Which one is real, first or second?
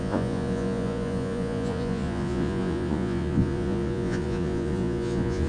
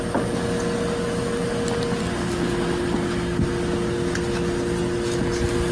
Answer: second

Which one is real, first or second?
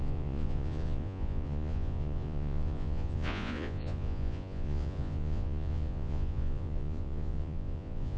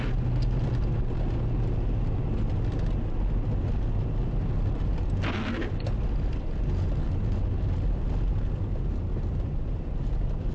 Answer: second